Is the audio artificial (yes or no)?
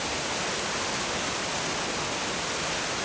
no